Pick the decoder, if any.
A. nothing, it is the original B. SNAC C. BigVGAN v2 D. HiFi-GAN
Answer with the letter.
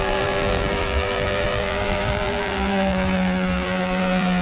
C